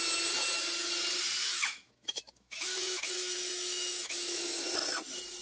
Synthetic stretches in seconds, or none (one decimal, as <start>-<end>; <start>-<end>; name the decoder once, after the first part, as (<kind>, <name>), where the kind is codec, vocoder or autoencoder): 1.4-4.6 (autoencoder, DAC-VAE)